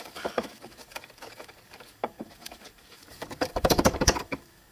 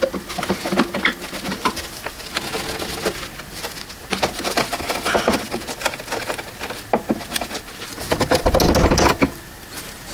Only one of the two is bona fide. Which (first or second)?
second